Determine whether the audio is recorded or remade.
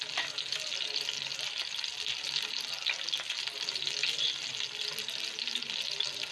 recorded